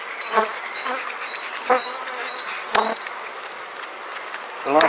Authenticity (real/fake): real